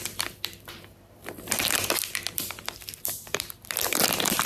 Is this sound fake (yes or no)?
yes